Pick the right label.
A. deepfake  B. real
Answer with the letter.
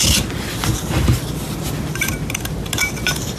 B